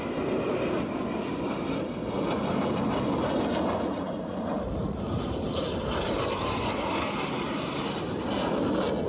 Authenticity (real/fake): real